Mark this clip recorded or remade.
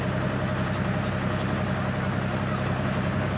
recorded